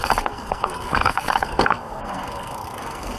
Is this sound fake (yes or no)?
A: yes